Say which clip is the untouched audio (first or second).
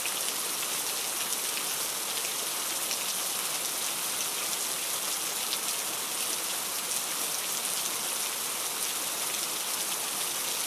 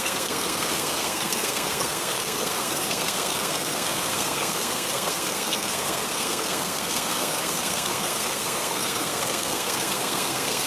first